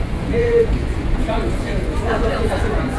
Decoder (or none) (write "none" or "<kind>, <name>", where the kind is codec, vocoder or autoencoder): vocoder, Vocos